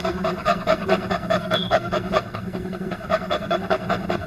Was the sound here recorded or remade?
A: remade